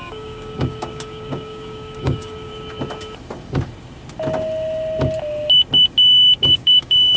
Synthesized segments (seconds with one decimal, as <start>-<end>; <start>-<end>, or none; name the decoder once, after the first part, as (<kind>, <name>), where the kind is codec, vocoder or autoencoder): 0.0-2.5 (codec, DAC); 6.4-7.2